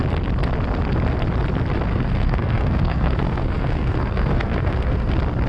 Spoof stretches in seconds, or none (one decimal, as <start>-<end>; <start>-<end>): 1.9-5.1